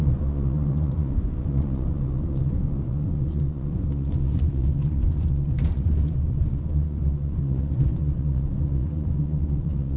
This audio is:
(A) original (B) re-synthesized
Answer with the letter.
B